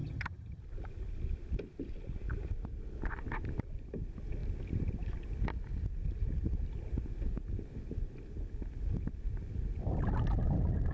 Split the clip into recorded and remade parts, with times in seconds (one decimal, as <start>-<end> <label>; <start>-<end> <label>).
0.0-0.6 remade; 0.6-10.9 recorded